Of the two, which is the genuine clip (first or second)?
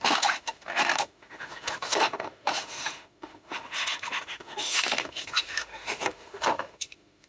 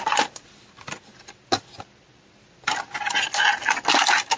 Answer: second